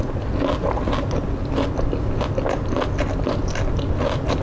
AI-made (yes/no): no